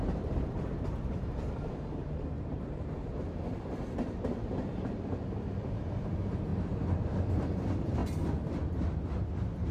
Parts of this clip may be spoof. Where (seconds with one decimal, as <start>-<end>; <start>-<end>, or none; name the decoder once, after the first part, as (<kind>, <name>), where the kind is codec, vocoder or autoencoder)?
0.0-6.5 (vocoder, BigVGAN v2); 7.3-8.0; 9.2-9.7